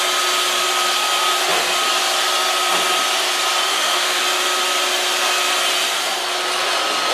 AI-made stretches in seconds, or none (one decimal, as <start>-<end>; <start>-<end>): 3.7-4.2